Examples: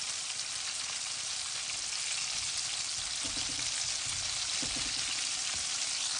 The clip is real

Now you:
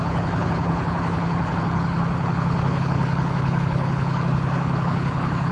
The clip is fake